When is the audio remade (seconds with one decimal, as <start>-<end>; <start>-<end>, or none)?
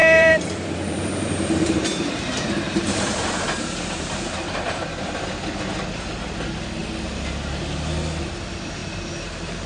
0.0-4.8; 8.8-9.7